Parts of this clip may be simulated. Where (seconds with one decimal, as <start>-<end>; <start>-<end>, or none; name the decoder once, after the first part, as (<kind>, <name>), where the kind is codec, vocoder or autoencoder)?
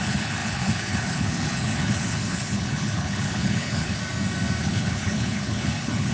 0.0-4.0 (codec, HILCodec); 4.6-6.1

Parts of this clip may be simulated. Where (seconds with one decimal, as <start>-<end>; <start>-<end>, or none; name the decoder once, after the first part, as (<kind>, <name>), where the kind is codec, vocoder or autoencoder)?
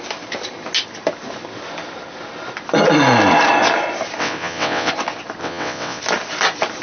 4.2-4.9 (vocoder, WaveNeXt); 5.4-6.0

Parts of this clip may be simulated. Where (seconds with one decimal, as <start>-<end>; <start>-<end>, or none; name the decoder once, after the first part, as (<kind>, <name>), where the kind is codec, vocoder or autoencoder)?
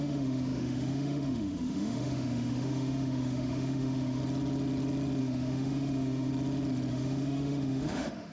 0.0-4.2 (autoencoder, DAC-VAE); 5.2-6.3; 6.9-8.3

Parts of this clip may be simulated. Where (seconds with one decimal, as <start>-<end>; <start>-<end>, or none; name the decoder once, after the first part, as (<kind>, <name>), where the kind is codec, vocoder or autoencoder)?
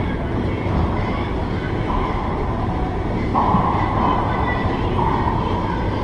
0.0-3.3 (vocoder, BigVGAN v2); 3.9-6.0